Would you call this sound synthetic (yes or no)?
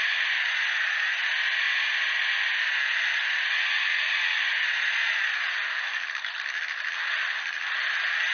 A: no